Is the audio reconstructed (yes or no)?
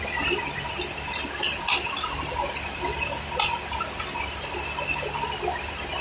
no